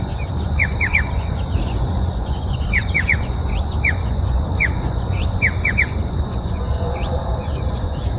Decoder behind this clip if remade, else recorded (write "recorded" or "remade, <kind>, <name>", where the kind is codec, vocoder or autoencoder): remade, vocoder, Vocos